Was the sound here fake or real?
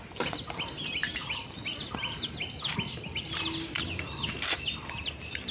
real